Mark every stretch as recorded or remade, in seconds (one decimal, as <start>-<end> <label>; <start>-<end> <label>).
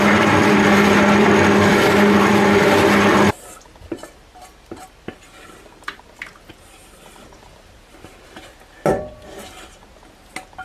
0.0-10.6 recorded